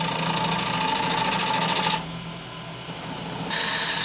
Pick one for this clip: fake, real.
real